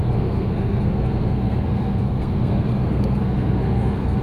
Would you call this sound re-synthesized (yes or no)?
yes